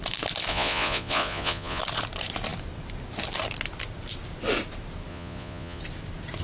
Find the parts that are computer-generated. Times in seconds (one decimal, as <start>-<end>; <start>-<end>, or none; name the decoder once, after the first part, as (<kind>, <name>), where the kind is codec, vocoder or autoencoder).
0.5-1.8 (vocoder, Vocos); 5.1-5.8